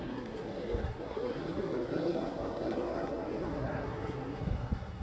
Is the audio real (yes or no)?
no